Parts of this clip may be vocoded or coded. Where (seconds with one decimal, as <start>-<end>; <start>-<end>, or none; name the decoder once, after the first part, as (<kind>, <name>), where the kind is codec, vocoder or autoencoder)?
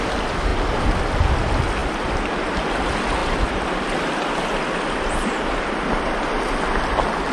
none